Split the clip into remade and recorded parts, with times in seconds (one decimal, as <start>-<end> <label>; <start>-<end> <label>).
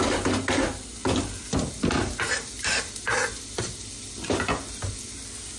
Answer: 0.0-1.0 recorded; 1.0-4.4 remade; 4.4-5.6 recorded